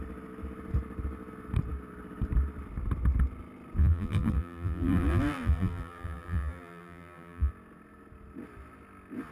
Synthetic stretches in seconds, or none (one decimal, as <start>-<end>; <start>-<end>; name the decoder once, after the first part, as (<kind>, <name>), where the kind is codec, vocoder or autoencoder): 3.8-7.5 (vocoder, BigVGAN v2)